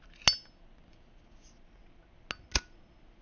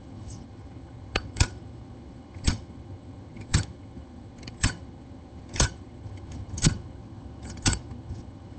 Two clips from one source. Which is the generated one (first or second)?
second